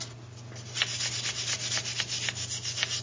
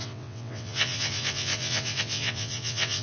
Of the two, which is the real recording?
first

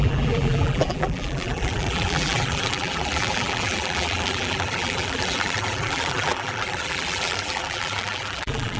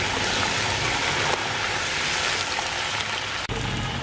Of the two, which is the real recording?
second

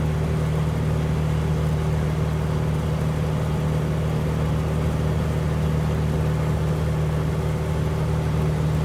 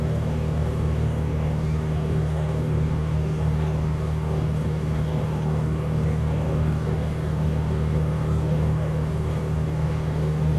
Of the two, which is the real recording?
first